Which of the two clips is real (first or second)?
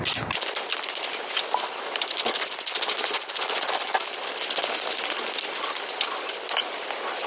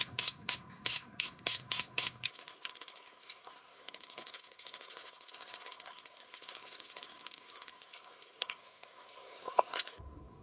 first